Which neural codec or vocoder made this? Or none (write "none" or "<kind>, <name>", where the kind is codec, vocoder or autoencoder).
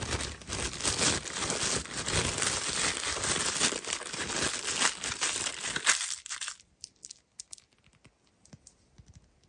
none